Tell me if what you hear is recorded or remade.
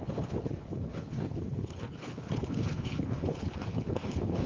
remade